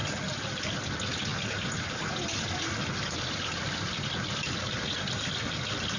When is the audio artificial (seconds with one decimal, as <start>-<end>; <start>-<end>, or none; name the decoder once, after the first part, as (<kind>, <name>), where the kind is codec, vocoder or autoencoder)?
none